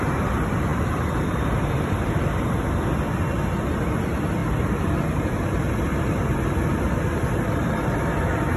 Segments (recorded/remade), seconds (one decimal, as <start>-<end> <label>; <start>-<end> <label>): 0.0-0.7 recorded; 0.7-2.5 remade; 2.5-4.4 recorded; 4.4-8.0 remade; 8.0-8.6 recorded